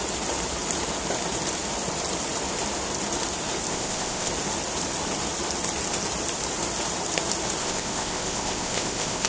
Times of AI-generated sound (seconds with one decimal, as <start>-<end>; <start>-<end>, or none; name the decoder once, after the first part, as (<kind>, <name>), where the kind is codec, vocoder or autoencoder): 3.7-4.3 (codec, ZipCodec); 7.6-9.3